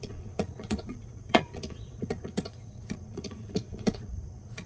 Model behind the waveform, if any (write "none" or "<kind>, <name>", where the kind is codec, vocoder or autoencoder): vocoder, Vocos